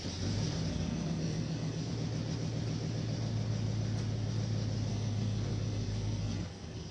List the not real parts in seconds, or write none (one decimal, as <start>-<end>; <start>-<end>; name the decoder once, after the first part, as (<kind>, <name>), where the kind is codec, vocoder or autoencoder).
0.7-1.9 (codec, SNAC); 4.9-6.9